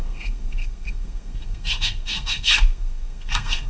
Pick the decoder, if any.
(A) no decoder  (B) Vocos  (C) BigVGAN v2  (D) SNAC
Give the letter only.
D